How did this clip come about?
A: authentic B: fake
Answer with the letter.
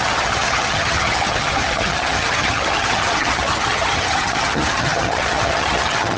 B